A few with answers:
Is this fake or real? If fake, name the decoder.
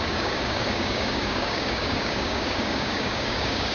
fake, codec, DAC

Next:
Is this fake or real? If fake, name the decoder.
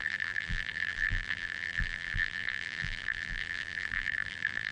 fake, vocoder, BigVGAN v2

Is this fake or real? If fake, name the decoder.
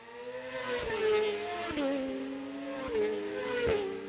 real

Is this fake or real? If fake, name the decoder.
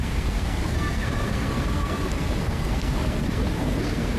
fake, codec, SNAC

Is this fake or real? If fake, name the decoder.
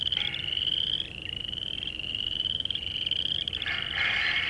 fake, vocoder, BigVGAN v2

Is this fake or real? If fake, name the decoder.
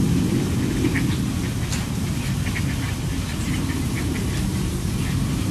real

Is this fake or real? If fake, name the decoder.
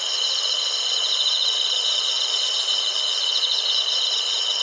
fake, vocoder, Vocos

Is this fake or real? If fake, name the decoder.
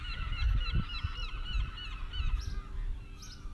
real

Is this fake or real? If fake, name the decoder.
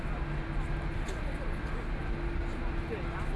real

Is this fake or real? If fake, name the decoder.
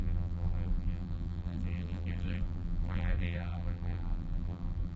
fake, vocoder, BigVGAN v2